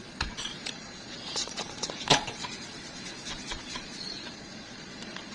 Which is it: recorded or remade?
remade